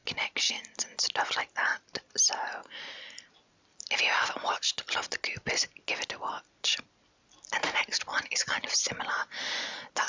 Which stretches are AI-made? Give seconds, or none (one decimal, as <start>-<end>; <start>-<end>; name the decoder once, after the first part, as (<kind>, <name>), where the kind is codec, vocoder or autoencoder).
8.1-8.9 (vocoder, HiFi-GAN)